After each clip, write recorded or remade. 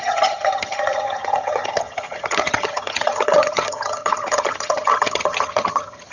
remade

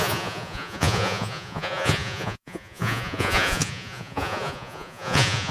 remade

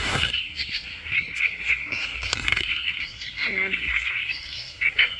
remade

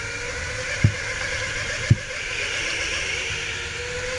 recorded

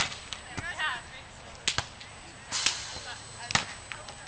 recorded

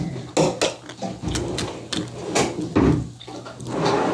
recorded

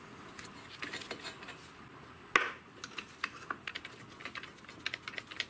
recorded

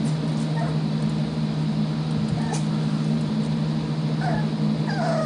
recorded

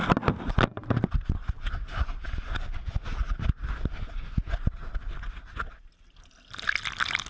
recorded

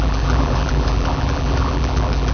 remade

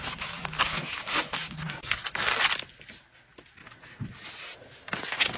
recorded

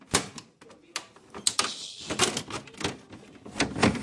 recorded